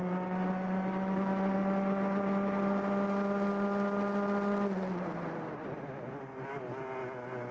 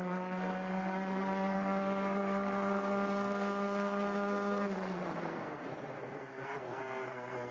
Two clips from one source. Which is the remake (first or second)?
second